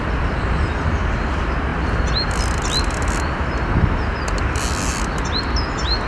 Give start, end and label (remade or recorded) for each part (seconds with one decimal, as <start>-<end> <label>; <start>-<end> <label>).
0.0-6.1 recorded